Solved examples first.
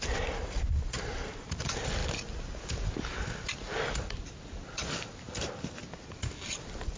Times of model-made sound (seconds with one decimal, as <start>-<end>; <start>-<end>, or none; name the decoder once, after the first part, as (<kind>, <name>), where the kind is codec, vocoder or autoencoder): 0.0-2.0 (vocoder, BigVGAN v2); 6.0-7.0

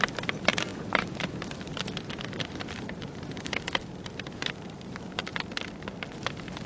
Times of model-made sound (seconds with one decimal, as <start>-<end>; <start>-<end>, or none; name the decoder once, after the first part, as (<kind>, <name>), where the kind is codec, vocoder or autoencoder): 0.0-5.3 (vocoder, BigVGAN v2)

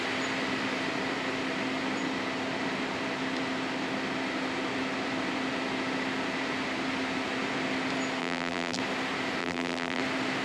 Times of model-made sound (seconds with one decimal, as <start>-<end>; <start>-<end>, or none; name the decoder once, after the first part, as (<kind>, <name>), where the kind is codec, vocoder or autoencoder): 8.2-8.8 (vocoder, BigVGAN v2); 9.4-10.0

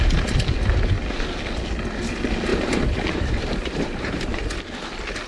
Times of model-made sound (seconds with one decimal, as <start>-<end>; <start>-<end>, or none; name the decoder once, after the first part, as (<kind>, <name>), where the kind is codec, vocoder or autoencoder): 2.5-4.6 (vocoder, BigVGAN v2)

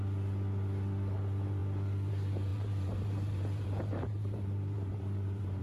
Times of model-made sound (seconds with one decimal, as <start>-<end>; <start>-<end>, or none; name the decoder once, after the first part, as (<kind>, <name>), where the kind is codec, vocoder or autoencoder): 2.5-5.6 (vocoder, BigVGAN v2)

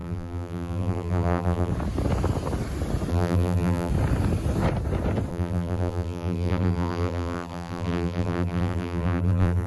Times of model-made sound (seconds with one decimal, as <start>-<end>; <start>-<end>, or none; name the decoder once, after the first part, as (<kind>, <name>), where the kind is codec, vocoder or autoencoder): 0.0-1.7 (vocoder, BigVGAN v2); 3.1-3.9; 5.3-9.7

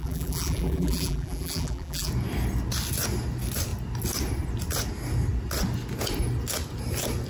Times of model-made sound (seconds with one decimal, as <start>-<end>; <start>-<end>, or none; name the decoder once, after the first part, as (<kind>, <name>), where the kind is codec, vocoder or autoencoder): 0.0-2.1 (vocoder, BigVGAN v2)

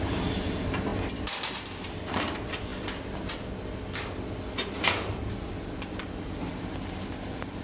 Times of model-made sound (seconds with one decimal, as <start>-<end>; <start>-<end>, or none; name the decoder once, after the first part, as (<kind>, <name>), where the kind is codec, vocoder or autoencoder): 0.0-2.7 (vocoder, BigVGAN v2); 5.9-7.6